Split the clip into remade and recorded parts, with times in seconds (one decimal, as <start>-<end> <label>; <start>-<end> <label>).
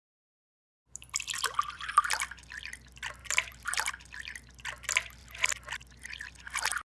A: 0.0-0.6 recorded; 0.6-2.1 remade; 2.1-3.2 recorded; 3.2-3.9 remade; 3.9-6.9 recorded